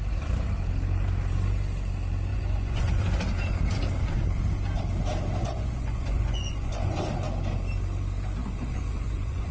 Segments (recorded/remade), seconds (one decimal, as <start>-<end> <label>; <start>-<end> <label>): 0.0-2.3 recorded; 2.3-3.0 remade; 3.0-5.4 recorded; 5.4-6.8 remade; 6.8-8.4 recorded; 8.4-9.5 remade